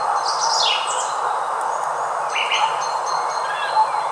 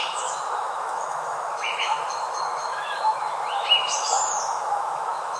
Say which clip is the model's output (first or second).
second